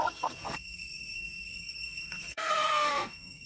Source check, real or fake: fake